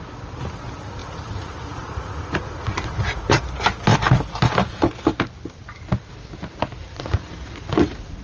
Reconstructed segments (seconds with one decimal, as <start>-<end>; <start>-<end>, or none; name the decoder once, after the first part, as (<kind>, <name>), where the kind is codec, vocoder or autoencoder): 1.0-3.4 (vocoder, Vocos); 6.8-8.2